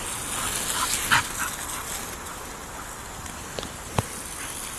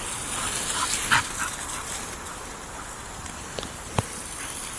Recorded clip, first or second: first